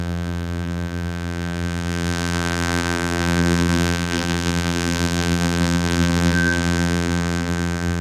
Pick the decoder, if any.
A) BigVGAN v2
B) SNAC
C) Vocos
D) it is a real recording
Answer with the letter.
A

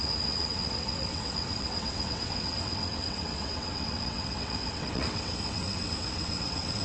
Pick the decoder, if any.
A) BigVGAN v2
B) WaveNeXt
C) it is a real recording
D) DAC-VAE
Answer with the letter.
B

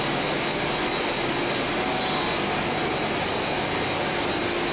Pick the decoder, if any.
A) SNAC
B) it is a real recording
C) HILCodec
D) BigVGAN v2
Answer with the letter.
B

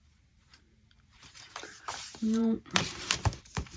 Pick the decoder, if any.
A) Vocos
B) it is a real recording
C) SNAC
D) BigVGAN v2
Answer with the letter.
D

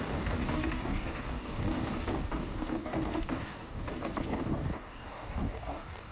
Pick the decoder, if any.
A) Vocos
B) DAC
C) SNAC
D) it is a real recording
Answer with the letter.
B